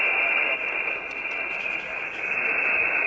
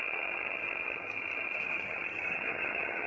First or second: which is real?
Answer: first